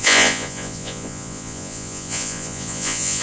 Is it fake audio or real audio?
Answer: fake